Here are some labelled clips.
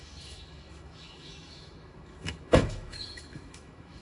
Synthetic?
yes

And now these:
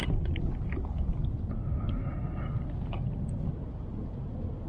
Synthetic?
no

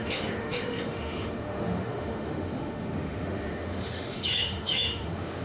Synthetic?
yes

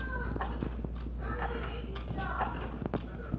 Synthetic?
no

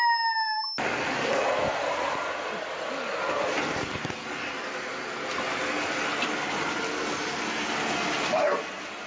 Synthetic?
no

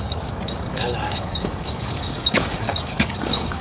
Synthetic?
yes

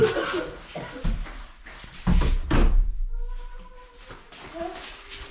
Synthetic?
no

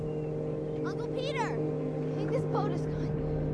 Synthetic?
no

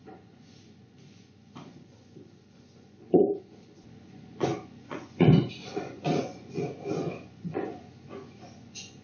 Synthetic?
yes